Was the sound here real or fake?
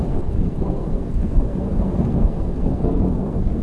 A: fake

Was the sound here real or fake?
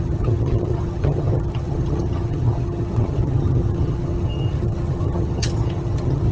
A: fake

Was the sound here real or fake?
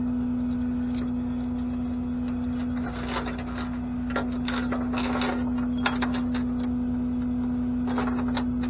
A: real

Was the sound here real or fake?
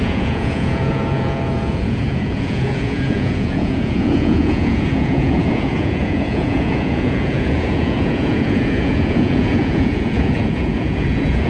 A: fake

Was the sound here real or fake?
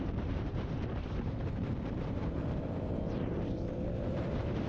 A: fake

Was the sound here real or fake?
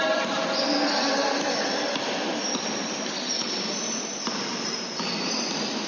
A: fake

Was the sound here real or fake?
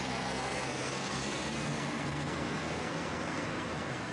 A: fake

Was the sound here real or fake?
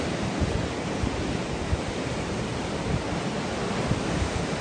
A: real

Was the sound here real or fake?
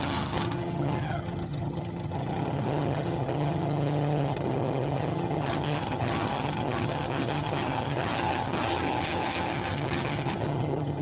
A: fake